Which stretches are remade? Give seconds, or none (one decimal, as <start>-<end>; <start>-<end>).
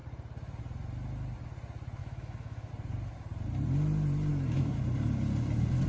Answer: 2.0-2.7; 4.3-4.8